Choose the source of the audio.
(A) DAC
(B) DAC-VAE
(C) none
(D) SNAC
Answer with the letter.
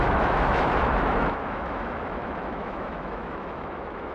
B